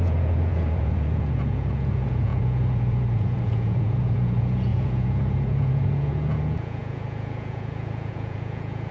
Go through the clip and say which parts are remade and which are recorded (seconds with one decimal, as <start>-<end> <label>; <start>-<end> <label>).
0.0-8.9 remade